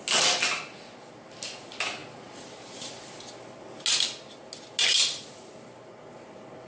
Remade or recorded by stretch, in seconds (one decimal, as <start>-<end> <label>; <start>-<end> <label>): 0.0-6.7 recorded